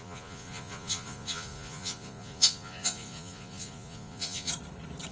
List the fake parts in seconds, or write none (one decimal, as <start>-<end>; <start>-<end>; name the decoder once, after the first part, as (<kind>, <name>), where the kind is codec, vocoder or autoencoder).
0.0-4.5 (vocoder, Vocos)